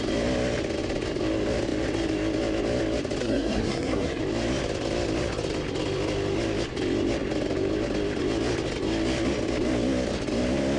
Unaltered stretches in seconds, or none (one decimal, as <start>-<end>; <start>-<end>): 0.0-3.2; 4.2-10.8